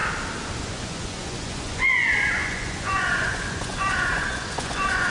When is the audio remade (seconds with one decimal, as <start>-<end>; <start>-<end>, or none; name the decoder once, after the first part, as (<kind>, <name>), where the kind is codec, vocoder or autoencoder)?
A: 0.6-5.1 (vocoder, Vocos)